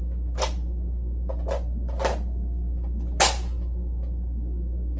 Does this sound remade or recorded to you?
recorded